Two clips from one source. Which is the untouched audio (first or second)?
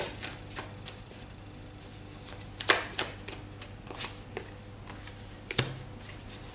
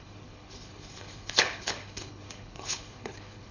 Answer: first